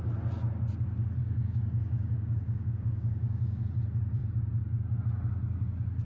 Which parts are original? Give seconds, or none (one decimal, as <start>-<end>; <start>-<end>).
0.0-1.2; 3.6-6.0